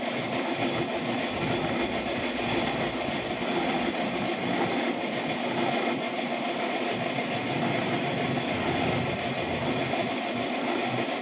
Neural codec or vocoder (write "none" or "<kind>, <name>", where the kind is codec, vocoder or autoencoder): none